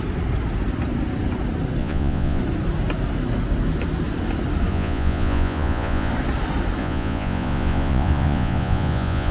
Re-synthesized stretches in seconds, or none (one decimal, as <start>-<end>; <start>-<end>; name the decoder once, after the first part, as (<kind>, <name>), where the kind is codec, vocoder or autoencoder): 1.8-2.4 (vocoder, Vocos); 4.7-6.1; 6.8-9.3